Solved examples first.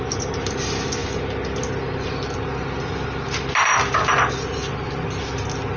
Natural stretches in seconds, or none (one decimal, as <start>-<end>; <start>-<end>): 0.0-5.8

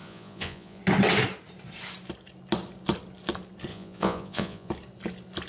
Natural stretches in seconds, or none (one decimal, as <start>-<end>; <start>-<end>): 0.8-3.7; 4.7-5.5

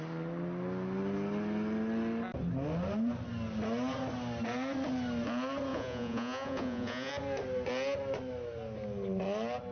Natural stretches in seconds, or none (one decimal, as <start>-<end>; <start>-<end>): 0.0-5.7; 7.1-9.7

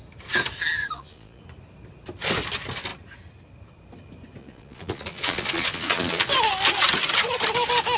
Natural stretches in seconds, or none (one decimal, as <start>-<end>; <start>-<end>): 0.0-0.8; 1.4-4.4; 6.3-8.0

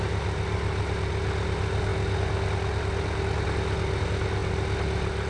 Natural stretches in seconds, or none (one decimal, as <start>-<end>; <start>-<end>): 0.0-5.3